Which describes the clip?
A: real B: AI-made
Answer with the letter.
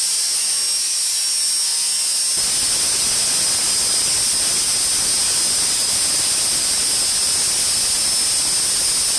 A